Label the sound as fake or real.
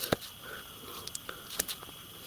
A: real